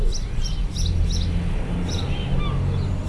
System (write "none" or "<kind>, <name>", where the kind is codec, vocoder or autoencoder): none